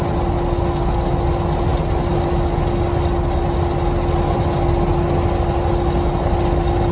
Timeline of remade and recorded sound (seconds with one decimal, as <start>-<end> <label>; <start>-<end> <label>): 0.0-6.9 recorded